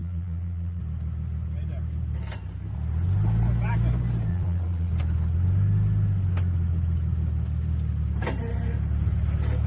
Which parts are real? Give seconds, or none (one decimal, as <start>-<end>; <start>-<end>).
0.8-4.3; 4.9-9.7